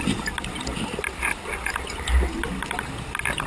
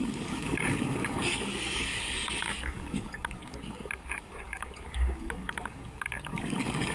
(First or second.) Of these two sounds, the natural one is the first